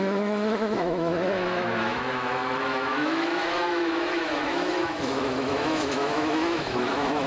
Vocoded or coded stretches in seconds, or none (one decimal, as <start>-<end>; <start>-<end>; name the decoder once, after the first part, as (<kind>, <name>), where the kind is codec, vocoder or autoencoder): 0.0-7.3 (autoencoder, DAC-VAE)